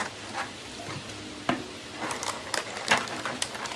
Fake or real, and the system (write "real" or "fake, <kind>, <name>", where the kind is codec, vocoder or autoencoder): real